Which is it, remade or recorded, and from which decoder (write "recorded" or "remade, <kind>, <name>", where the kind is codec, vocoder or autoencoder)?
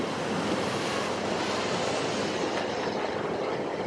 recorded